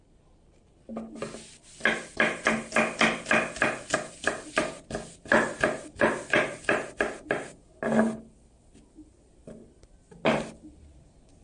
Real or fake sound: real